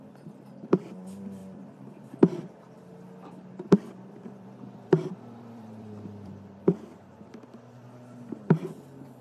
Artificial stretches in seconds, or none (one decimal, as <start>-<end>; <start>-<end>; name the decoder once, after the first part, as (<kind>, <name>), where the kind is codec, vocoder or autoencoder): 1.4-6.6 (vocoder, BigVGAN v2)